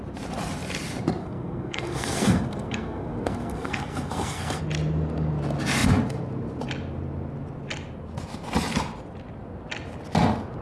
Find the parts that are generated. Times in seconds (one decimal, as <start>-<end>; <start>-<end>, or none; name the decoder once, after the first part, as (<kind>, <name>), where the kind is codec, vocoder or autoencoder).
1.2-4.6 (codec, SNAC)